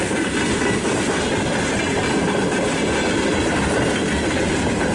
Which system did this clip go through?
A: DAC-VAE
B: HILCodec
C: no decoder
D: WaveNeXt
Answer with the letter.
C